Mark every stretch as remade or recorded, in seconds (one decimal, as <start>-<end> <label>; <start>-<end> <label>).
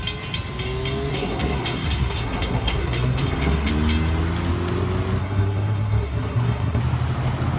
0.0-1.1 recorded; 1.1-3.7 remade; 3.7-5.2 recorded; 5.2-6.8 remade; 6.8-7.6 recorded